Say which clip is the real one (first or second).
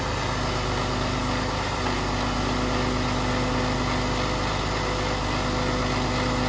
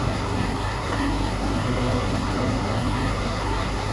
first